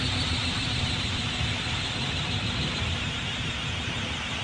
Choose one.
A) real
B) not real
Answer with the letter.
B